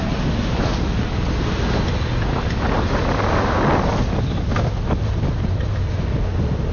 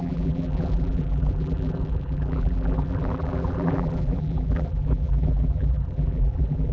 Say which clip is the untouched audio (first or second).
first